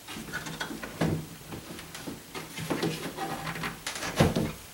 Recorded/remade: recorded